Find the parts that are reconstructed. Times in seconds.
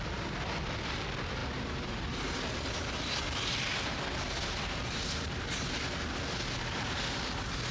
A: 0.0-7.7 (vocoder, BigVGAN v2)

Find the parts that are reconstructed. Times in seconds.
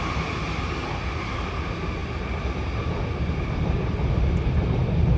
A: none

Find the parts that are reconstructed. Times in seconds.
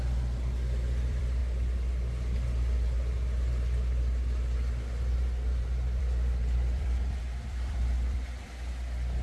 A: 0.0-1.4 (vocoder, BigVGAN v2); 6.0-9.2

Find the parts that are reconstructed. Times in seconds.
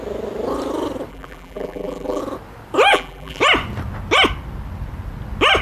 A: 1.1-2.2 (vocoder, BigVGAN v2); 2.9-3.4